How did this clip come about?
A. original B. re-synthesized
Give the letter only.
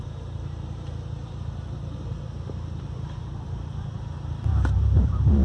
B